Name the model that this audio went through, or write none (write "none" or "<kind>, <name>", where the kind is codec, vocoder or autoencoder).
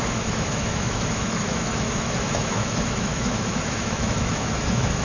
autoencoder, DAC-VAE